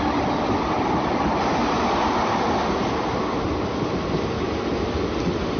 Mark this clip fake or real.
real